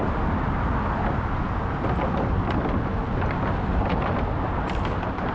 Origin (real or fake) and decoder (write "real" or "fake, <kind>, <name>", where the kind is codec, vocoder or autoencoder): real